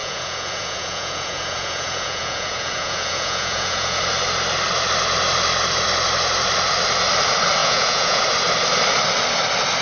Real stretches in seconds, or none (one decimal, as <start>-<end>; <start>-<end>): 4.0-7.6; 8.2-9.8